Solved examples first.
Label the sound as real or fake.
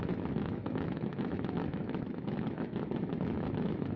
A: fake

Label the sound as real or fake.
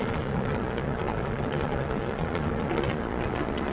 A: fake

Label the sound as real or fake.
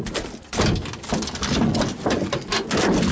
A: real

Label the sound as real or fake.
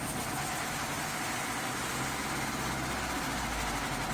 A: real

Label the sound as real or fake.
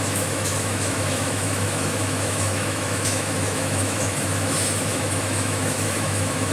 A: fake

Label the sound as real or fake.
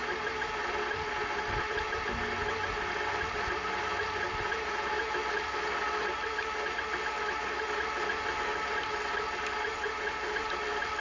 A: real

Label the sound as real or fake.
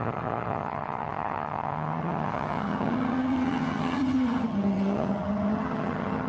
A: fake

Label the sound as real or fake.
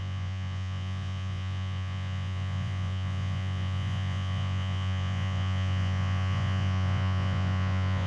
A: fake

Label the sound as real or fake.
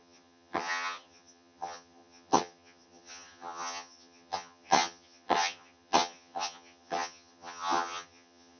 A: fake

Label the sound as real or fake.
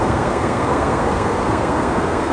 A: fake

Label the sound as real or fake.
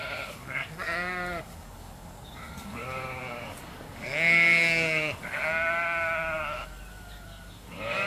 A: fake